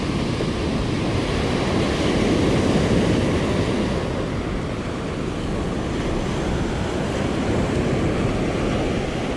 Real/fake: real